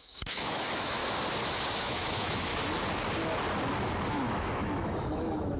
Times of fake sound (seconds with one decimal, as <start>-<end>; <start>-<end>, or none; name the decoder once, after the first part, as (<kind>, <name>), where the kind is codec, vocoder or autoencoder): 0.0-1.0 (autoencoder, DAC-VAE); 1.8-2.5; 4.1-5.6